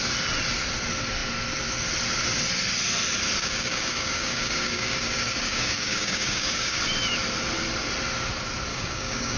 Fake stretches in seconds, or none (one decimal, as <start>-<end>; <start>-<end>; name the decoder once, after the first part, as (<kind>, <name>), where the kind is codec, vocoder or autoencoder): 3.4-6.8 (codec, DAC); 8.7-9.4